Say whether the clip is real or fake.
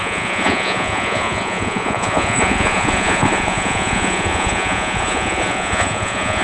fake